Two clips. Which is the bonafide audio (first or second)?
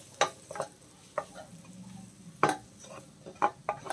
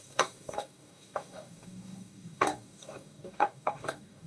first